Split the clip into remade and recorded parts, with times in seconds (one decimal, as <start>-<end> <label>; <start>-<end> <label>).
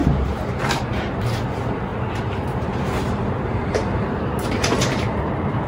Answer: 0.0-0.9 remade; 0.9-1.9 recorded; 1.9-5.3 remade; 5.3-5.7 recorded